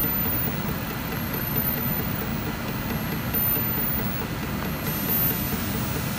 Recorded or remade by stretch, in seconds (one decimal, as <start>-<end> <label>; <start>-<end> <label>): 0.0-0.6 recorded; 0.6-2.3 remade; 2.3-6.2 recorded